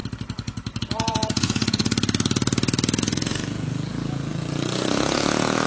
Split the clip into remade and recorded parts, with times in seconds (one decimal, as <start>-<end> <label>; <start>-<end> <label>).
0.0-0.8 recorded; 0.8-1.8 remade; 1.8-3.0 recorded; 3.0-5.7 remade